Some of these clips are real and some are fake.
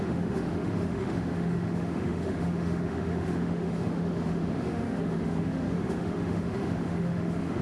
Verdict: fake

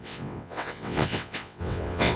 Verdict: fake